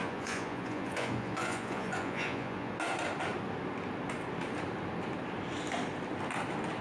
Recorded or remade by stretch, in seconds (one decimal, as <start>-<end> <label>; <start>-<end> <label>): 0.0-2.7 remade; 2.7-6.8 recorded